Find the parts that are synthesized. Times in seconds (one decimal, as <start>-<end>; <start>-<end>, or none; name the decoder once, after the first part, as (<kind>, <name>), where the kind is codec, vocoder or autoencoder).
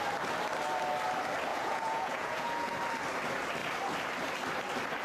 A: 1.5-2.7 (vocoder, Vocos)